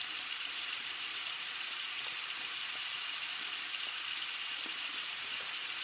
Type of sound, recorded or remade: remade